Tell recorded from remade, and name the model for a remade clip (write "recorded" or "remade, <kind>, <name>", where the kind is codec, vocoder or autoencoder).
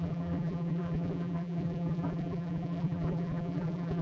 remade, vocoder, BigVGAN v2